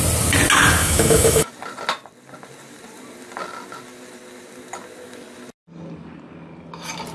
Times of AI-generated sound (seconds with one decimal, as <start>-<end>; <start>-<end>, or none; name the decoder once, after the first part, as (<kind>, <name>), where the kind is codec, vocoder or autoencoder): 0.8-1.5 (autoencoder, DAC-VAE)